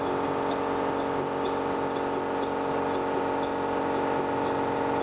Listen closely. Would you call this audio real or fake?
real